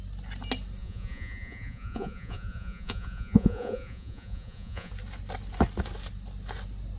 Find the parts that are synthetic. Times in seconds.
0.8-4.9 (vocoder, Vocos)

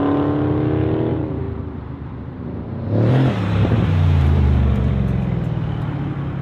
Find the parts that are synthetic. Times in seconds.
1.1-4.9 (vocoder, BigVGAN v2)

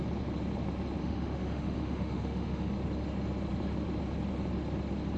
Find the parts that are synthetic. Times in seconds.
1.0-2.7 (autoencoder, DAC-VAE)

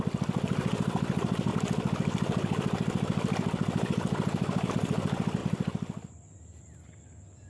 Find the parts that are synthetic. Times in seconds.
none